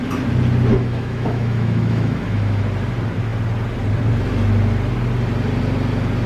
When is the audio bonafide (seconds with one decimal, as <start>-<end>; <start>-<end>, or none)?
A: 0.0-0.7; 2.6-6.3